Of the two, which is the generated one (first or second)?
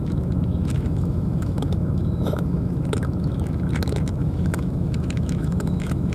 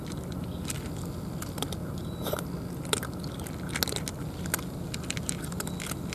first